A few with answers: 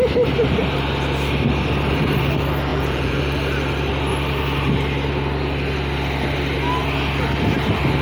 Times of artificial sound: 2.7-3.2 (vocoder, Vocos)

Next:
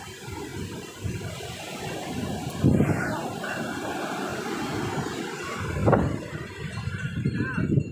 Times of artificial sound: 0.5-1.3 (vocoder, BigVGAN v2); 5.8-6.5

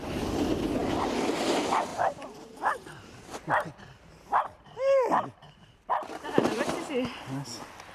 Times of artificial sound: 1.9-6.6 (vocoder, BigVGAN v2)

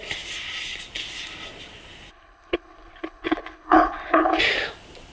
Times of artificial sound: 2.1-4.4 (codec, HILCodec)